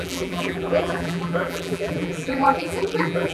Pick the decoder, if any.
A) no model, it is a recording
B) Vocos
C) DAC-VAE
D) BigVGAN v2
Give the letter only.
D